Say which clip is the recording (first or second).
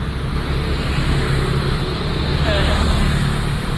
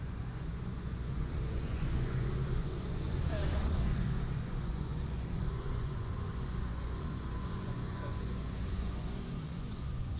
first